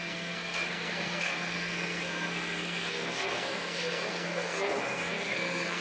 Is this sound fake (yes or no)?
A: yes